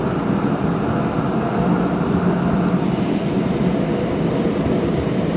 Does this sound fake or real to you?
real